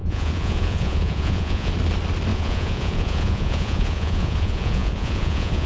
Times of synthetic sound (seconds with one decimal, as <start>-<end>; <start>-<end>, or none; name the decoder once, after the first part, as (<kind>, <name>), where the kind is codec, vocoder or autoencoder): 0.0-1.7 (vocoder, Vocos); 2.3-5.7